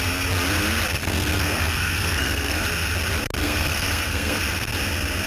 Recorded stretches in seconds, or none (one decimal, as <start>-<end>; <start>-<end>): 0.0-1.0; 2.6-3.4; 4.4-5.3